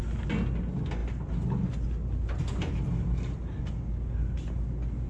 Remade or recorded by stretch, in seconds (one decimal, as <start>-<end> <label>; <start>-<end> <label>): 0.0-5.1 recorded